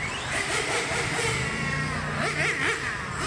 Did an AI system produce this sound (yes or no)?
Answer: no